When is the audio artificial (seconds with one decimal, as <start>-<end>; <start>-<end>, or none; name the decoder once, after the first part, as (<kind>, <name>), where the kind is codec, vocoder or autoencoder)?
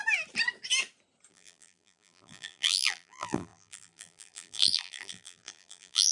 1.3-6.1 (vocoder, BigVGAN v2)